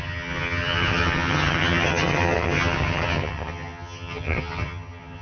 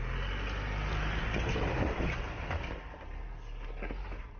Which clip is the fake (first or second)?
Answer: first